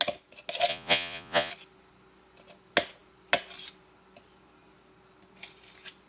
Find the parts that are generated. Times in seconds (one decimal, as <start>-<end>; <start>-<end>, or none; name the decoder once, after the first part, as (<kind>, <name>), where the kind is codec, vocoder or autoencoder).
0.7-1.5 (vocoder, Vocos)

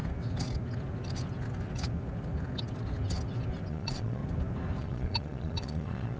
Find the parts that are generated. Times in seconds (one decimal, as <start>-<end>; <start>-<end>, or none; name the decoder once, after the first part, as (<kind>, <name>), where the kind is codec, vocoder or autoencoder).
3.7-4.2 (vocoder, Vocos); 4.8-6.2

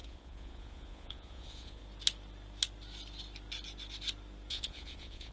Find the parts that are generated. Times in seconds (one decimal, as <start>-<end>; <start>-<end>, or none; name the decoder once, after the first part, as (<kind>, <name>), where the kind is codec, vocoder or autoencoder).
0.0-1.8 (vocoder, Vocos); 4.5-5.3

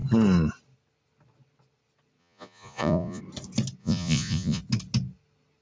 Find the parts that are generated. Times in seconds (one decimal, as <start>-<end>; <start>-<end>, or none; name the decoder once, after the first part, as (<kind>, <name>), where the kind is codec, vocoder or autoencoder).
2.2-3.2 (vocoder, Vocos); 3.8-4.6

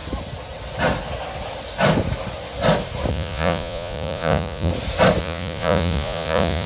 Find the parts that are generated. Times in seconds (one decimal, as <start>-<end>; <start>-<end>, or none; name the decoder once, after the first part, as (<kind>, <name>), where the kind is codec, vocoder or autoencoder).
3.1-4.7 (vocoder, Vocos); 5.2-6.7

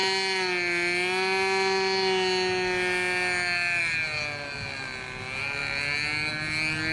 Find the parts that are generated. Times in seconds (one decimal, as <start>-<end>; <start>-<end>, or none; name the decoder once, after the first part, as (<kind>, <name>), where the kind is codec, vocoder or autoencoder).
none

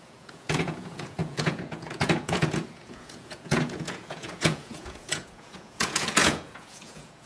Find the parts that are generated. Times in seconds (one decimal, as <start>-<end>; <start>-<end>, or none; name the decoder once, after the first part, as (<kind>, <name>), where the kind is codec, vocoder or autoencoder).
0.0-7.3 (vocoder, Vocos)

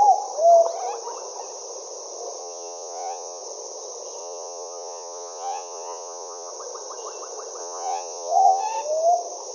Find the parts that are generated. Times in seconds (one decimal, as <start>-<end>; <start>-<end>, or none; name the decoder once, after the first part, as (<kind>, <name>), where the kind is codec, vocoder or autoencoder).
2.4-3.4 (vocoder, Vocos); 4.2-6.5; 7.6-8.6